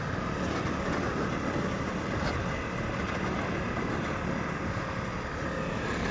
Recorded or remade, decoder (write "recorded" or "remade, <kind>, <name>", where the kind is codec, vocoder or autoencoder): recorded